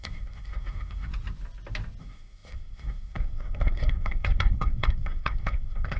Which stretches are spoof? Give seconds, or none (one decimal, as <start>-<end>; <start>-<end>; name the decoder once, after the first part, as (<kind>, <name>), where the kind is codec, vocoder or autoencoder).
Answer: 0.0-1.1 (codec, SNAC); 2.0-6.0